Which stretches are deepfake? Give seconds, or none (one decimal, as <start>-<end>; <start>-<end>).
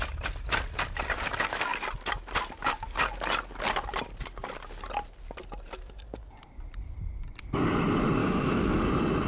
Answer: 8.2-8.8